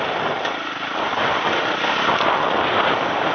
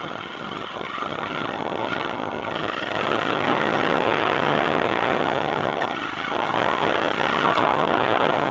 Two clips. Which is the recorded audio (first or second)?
first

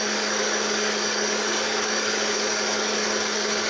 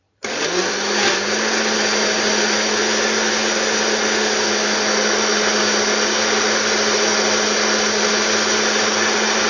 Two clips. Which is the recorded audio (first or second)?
second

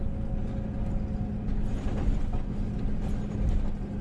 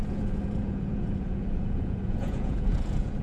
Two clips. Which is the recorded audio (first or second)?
first